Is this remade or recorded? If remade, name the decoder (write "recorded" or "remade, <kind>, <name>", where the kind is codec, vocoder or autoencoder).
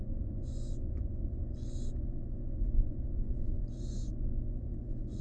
remade, vocoder, Vocos